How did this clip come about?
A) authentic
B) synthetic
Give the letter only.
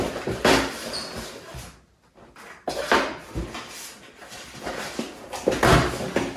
A